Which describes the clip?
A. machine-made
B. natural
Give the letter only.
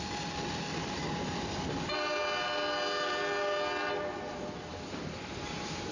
B